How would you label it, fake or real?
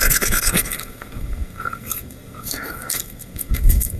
fake